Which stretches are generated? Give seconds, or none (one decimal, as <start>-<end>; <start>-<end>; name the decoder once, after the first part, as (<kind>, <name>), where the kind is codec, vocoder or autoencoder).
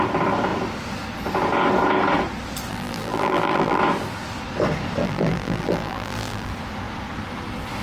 2.7-3.8 (vocoder, BigVGAN v2); 5.0-6.5